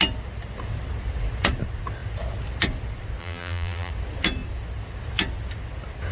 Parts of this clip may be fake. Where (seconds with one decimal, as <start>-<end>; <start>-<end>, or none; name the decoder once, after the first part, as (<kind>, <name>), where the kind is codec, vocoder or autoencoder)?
3.2-3.9 (vocoder, BigVGAN v2)